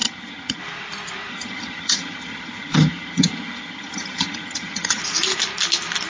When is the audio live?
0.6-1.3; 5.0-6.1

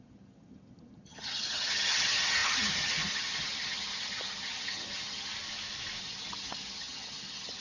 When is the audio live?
5.3-6.0